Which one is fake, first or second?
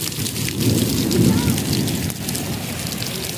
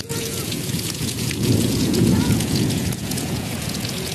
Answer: second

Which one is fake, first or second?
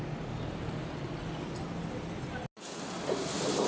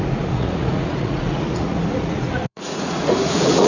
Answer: second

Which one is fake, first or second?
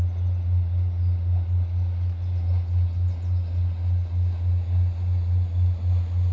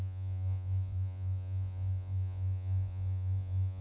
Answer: second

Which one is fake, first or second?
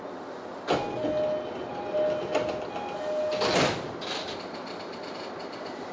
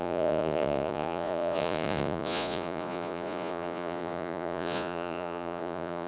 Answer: second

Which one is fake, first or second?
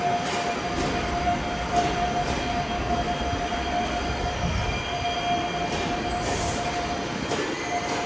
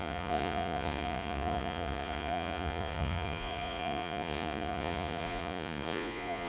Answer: second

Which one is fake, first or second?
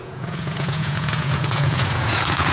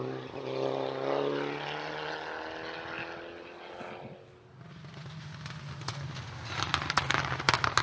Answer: first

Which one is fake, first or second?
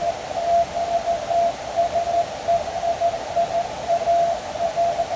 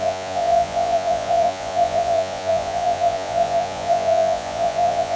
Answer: second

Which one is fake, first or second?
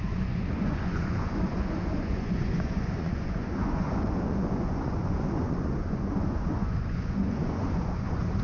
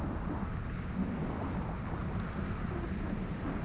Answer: first